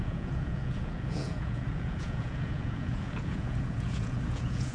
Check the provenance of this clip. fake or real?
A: fake